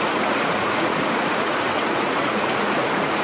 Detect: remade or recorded remade